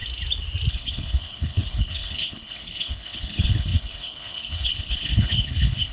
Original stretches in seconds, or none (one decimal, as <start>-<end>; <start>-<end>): 0.0-0.7